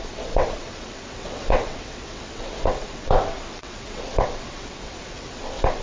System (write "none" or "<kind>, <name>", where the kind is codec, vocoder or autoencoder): vocoder, WaveNeXt